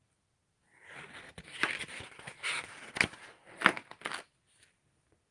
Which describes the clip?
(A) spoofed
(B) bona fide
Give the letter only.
B